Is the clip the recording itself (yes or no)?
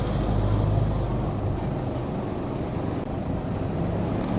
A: yes